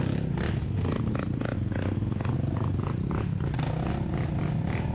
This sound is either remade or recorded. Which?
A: recorded